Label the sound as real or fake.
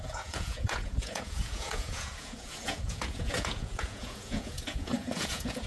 fake